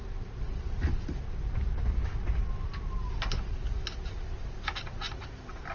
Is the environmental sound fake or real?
real